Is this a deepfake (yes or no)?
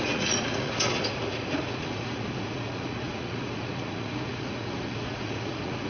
yes